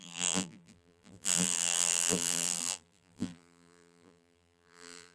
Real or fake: fake